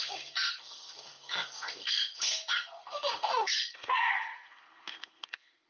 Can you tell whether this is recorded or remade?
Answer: remade